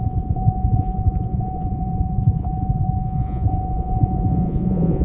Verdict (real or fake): fake